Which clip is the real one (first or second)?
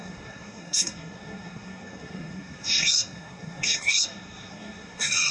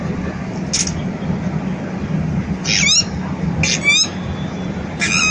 second